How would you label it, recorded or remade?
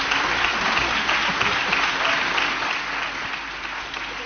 recorded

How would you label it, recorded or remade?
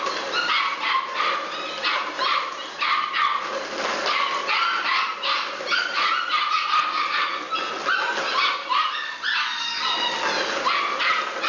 recorded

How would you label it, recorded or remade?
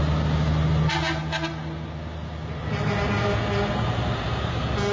recorded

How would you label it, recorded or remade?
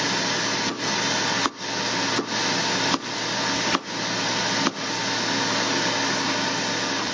recorded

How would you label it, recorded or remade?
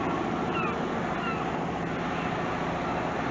recorded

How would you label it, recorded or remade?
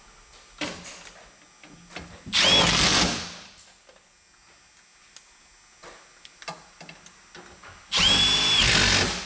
recorded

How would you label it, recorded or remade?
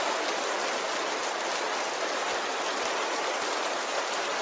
recorded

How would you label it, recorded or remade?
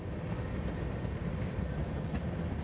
recorded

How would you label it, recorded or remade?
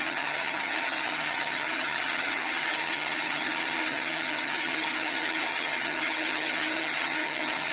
remade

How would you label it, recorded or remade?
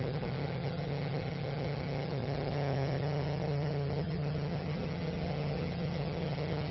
remade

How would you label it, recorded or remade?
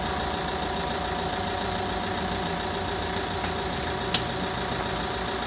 recorded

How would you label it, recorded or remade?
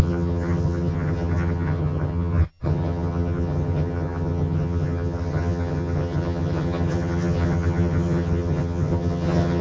remade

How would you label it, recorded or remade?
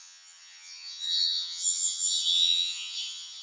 remade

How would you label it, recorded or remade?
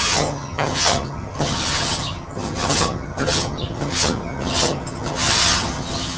remade